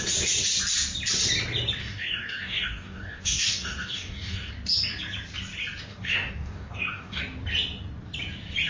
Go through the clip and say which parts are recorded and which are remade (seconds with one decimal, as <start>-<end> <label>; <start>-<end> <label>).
0.0-1.8 recorded; 1.8-4.5 remade; 4.5-5.9 recorded; 5.9-7.2 remade; 7.2-8.7 recorded